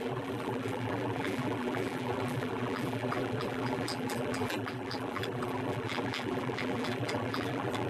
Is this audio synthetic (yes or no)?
yes